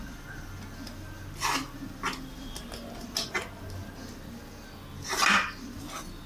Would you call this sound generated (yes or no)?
no